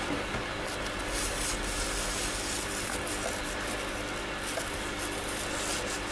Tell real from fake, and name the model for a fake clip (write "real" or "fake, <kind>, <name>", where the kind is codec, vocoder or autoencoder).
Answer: real